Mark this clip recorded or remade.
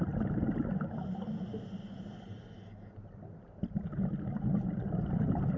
recorded